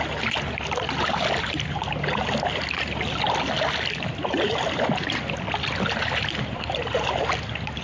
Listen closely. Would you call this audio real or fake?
real